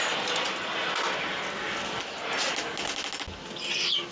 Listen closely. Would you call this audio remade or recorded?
recorded